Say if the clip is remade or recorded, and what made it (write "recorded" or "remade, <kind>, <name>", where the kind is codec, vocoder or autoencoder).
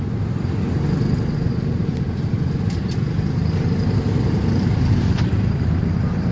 recorded